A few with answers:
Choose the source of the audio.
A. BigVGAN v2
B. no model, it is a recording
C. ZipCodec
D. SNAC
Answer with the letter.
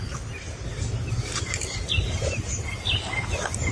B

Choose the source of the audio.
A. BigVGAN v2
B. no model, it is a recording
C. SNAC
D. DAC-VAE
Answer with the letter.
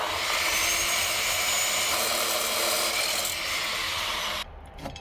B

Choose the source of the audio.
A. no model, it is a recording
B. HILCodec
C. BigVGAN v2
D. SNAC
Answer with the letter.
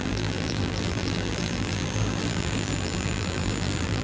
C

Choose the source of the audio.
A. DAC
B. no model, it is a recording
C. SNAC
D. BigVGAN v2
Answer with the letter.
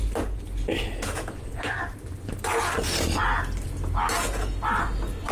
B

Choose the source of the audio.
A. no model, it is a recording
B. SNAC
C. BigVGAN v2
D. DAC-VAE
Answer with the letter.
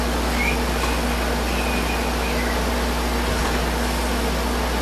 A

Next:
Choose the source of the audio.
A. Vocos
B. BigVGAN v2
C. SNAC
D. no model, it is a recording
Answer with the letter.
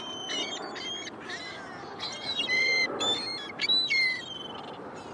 B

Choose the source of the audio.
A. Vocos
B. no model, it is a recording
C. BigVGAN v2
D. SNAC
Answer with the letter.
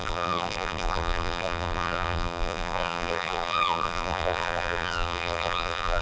C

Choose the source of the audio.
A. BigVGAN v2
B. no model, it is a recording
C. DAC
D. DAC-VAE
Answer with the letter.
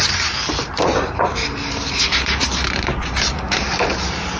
A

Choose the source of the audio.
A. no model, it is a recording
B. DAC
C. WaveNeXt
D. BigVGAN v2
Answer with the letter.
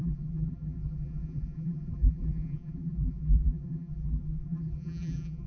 D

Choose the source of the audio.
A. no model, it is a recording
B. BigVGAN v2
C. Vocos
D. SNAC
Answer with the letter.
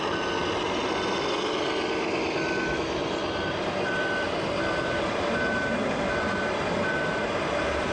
A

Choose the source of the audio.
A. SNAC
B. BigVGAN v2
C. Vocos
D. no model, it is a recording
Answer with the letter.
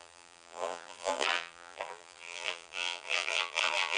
B